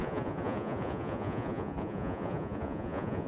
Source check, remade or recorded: remade